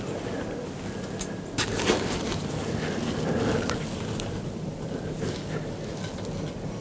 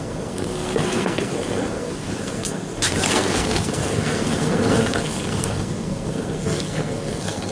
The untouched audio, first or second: first